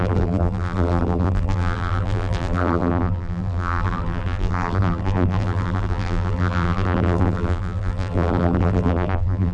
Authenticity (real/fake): fake